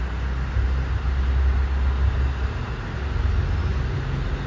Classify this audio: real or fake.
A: real